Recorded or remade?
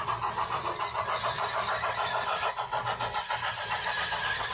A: recorded